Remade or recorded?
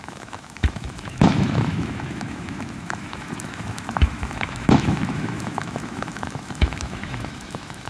remade